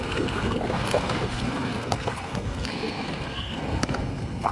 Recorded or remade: remade